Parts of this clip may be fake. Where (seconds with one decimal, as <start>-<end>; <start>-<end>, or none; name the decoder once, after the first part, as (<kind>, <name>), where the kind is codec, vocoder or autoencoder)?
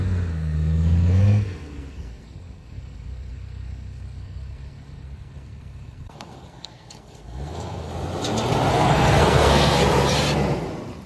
0.0-7.9 (codec, SNAC); 8.7-9.8